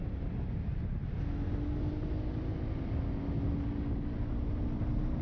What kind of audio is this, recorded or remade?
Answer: recorded